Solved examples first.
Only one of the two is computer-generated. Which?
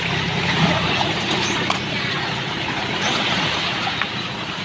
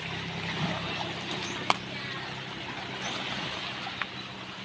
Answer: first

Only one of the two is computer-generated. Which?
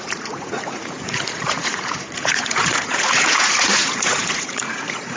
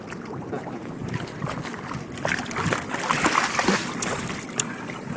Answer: first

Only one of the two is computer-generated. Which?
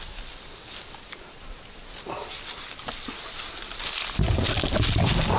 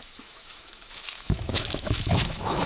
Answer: second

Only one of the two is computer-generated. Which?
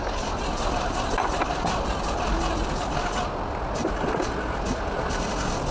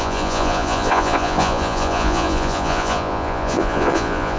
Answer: second